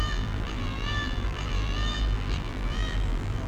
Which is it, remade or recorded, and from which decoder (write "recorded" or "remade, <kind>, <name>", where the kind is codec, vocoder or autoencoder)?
remade, vocoder, BigVGAN v2